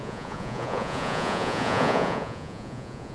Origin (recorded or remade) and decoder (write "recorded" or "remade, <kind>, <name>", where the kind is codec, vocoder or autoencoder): remade, vocoder, Vocos